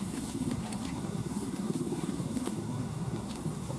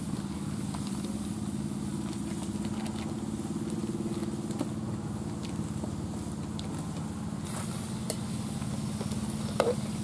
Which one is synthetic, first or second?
first